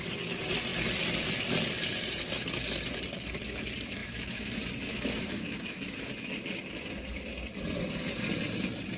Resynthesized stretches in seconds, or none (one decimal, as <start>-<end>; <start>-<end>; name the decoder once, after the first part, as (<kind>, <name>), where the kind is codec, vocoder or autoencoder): 4.0-4.5 (autoencoder, DAC-VAE); 4.9-5.8

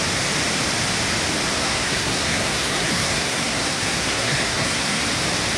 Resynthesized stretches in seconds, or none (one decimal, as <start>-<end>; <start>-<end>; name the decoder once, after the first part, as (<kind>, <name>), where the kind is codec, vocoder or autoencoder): 1.6-5.0 (codec, SNAC)